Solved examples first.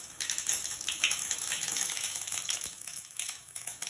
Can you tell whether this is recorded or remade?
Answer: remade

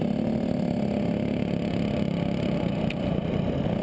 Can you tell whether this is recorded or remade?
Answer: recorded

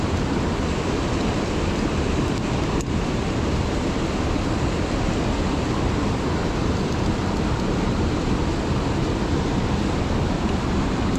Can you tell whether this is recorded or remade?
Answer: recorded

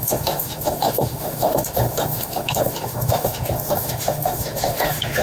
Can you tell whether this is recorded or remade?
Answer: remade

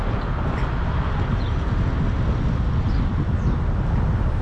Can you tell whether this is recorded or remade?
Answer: recorded